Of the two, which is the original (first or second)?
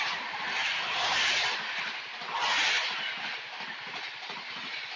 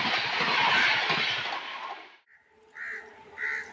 second